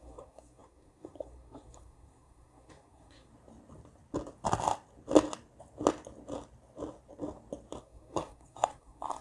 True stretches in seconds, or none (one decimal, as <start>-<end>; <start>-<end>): 3.3-7.8